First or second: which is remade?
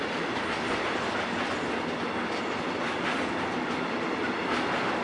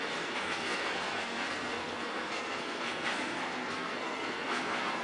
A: second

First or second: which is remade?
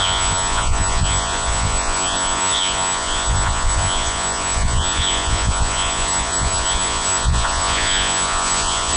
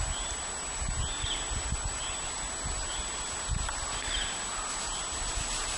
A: first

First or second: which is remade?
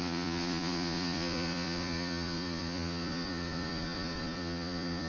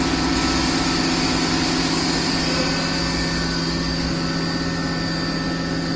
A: first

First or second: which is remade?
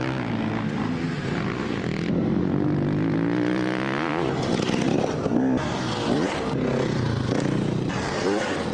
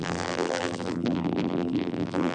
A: second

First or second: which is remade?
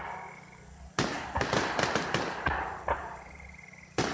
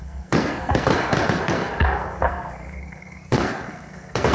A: second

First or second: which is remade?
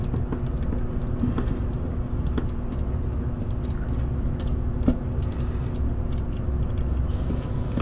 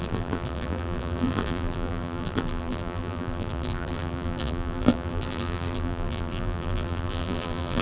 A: second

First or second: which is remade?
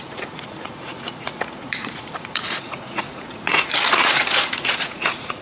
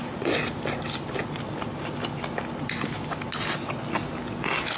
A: first